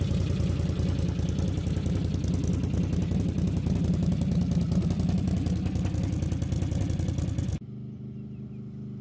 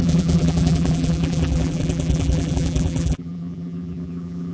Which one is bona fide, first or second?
first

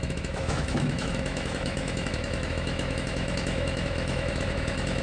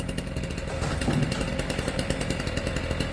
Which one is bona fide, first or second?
second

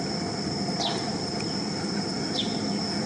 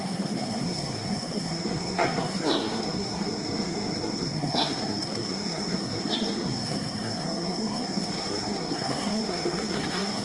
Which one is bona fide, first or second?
first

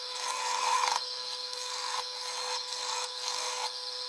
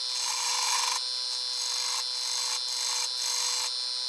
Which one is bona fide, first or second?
second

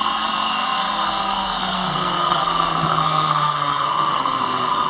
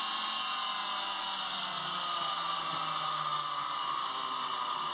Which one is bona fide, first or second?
second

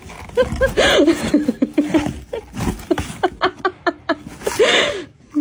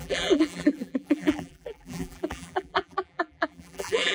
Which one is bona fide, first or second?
first